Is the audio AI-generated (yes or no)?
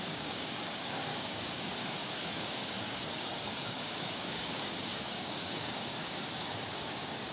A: yes